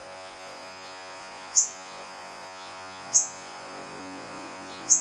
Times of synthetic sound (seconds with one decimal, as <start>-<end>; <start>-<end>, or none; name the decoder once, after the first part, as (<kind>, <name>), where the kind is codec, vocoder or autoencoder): 0.0-5.0 (vocoder, Vocos)